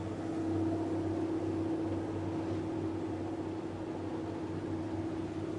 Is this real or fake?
real